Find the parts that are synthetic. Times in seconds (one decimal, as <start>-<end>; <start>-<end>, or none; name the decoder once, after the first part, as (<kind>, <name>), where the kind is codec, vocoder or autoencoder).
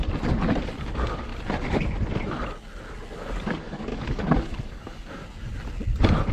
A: 0.8-1.3 (codec, DAC); 3.5-5.2